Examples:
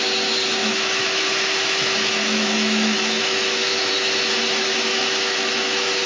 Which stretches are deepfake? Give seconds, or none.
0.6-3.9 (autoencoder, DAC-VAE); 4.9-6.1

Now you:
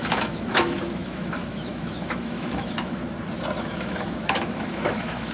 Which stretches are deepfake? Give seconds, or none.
0.0-3.0 (autoencoder, DAC-VAE); 3.6-5.3

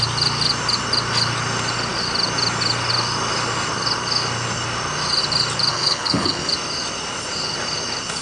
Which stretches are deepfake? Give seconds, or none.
5.7-6.5 (codec, HILCodec)

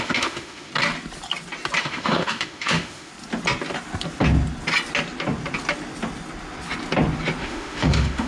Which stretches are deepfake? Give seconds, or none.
0.0-0.7 (autoencoder, DAC-VAE); 1.8-3.1; 7.4-8.3

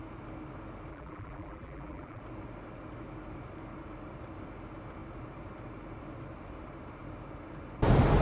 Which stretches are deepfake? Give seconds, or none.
0.9-2.2 (vocoder, BigVGAN v2)

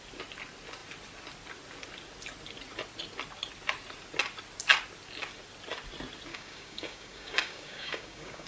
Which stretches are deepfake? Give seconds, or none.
6.3-8.5 (codec, DAC)